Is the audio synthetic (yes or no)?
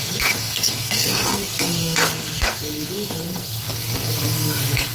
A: yes